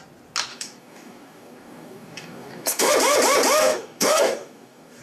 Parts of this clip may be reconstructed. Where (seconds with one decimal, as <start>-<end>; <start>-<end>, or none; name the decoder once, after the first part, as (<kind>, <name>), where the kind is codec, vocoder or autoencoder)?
0.5-2.9 (codec, DAC); 3.6-5.0